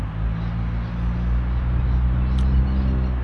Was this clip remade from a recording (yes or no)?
no